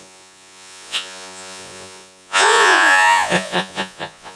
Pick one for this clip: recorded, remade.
remade